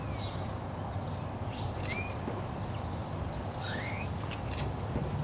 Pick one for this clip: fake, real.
real